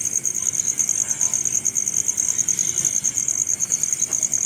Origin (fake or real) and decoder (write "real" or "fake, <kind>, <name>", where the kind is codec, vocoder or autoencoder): real